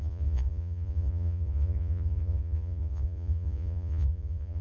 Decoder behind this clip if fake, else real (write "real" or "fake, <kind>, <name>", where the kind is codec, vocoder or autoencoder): fake, vocoder, Vocos